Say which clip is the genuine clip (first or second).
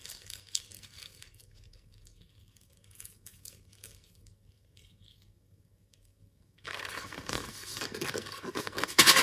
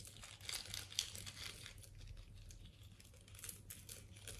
second